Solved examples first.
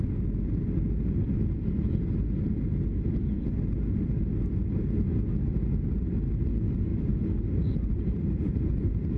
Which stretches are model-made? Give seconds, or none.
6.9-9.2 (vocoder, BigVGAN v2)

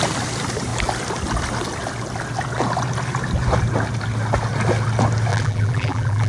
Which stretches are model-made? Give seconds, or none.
5.3-6.3 (vocoder, BigVGAN v2)

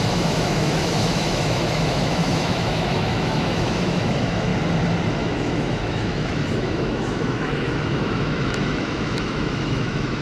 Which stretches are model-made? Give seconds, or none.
0.0-4.5 (autoencoder, DAC-VAE); 5.1-10.2